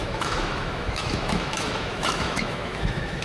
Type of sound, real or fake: fake